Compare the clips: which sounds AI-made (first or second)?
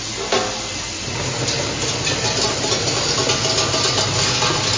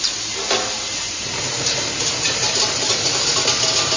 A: second